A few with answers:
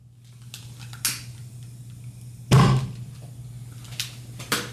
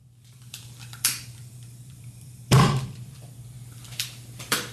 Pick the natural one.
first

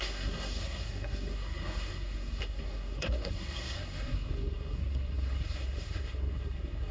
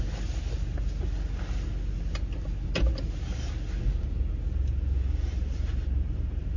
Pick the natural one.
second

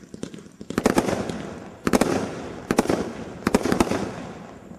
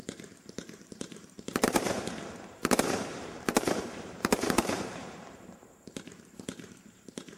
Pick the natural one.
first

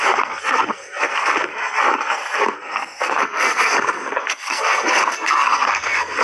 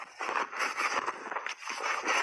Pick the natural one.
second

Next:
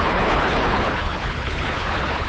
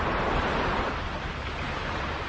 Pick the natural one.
second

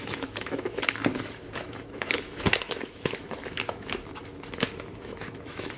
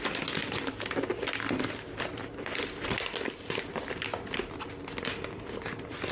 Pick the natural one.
second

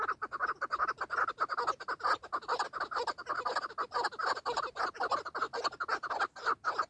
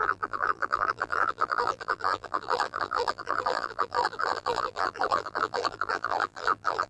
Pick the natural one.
first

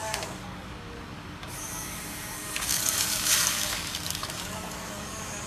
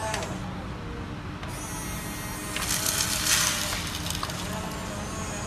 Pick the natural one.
second